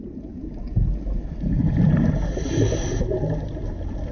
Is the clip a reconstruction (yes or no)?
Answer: no